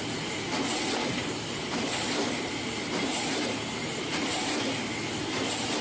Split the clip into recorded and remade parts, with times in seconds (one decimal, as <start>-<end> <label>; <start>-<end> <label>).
0.0-1.0 recorded; 1.0-4.4 remade; 4.4-5.8 recorded